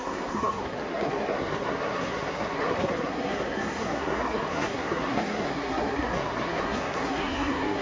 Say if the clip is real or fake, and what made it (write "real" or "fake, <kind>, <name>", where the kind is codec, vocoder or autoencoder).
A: fake, codec, SNAC